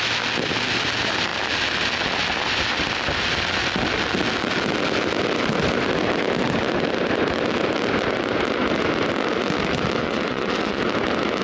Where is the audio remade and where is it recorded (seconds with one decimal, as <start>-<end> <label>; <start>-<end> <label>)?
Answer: 0.0-10.0 recorded; 10.0-10.8 remade; 10.8-11.4 recorded